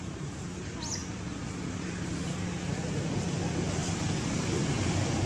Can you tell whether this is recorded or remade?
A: recorded